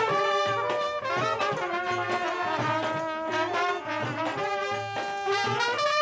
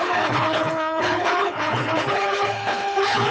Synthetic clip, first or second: second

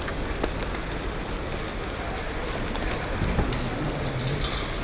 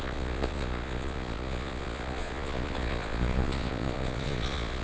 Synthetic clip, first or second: second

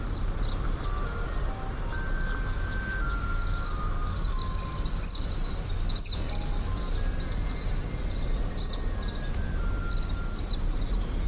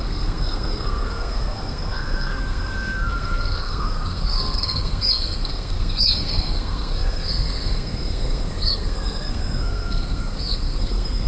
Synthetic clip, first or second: second